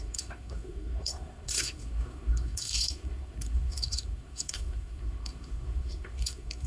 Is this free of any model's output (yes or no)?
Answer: no